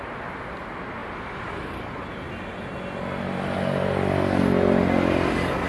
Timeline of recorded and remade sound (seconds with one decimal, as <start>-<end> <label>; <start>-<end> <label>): 0.0-5.7 recorded